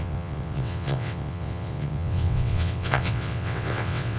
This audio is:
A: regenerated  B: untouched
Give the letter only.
A